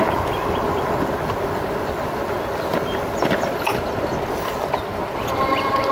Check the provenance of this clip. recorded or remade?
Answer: recorded